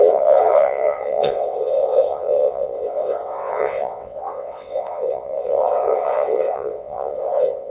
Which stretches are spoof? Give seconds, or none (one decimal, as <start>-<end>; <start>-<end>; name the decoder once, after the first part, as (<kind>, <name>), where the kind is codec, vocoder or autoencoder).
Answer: 0.0-7.7 (vocoder, WaveNeXt)